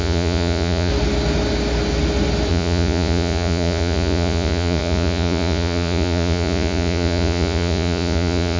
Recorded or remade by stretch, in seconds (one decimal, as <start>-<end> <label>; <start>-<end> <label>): 0.0-0.9 remade; 0.9-2.5 recorded; 2.5-8.6 remade